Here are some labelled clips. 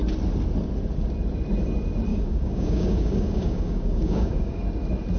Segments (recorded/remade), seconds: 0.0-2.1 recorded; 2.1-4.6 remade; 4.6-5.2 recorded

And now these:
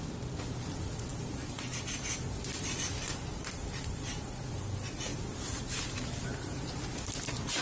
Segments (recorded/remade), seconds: 0.0-7.6 recorded

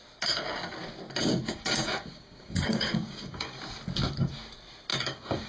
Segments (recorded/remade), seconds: 0.0-1.2 recorded; 1.2-3.6 remade; 3.6-4.9 recorded; 4.9-5.5 remade

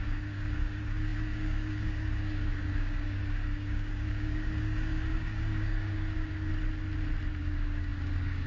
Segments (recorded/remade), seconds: 0.0-6.5 remade; 6.5-7.4 recorded; 7.4-8.5 remade

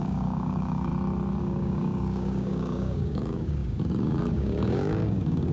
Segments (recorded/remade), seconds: 0.0-0.9 remade; 0.9-1.4 recorded; 1.4-5.5 remade

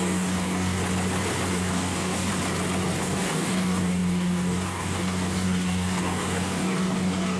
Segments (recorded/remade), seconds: 0.0-0.8 remade; 0.8-1.5 recorded; 1.5-2.3 remade; 2.3-3.0 recorded; 3.0-7.4 remade